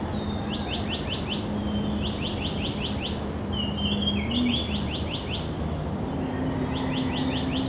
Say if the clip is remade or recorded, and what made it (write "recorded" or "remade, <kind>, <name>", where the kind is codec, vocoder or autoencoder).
recorded